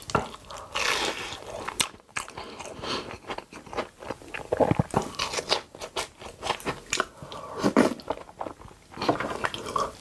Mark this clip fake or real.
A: real